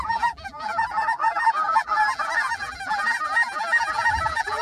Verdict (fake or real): fake